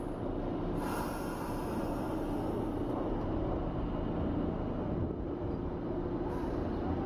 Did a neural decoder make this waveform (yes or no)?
no